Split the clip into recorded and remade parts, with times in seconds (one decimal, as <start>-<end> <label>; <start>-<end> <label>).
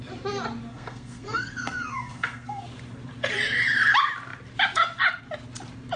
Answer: 0.0-0.7 recorded; 0.7-2.6 remade; 2.6-6.0 recorded